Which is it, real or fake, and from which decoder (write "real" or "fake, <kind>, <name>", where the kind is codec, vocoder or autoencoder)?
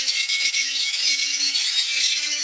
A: fake, autoencoder, DAC-VAE